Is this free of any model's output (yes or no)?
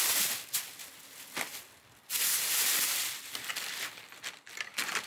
yes